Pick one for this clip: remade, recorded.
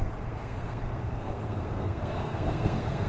remade